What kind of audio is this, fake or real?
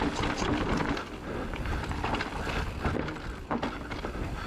real